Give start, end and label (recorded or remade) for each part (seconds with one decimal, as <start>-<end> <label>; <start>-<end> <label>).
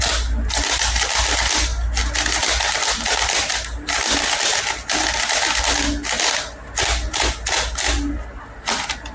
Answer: 0.0-9.1 recorded